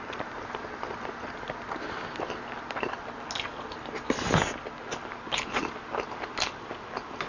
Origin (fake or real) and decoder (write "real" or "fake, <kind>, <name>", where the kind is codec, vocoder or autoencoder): real